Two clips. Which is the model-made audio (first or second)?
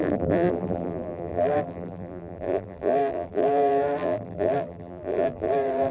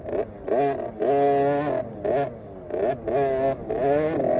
first